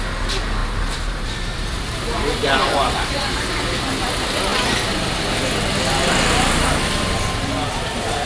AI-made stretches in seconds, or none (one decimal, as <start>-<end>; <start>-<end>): 0.6-2.0; 2.4-3.4